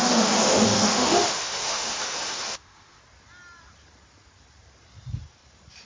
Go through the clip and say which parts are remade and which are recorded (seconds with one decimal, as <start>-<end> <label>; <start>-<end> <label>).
0.0-3.0 remade; 3.0-5.9 recorded